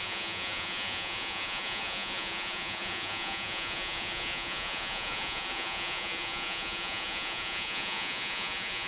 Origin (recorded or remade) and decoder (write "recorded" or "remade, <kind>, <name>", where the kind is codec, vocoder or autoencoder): remade, vocoder, Vocos